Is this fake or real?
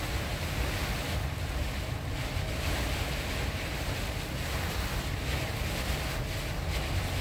real